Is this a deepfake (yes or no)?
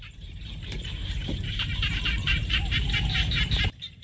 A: yes